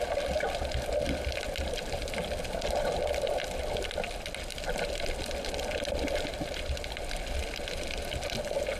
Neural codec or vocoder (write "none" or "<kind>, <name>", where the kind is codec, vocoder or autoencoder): none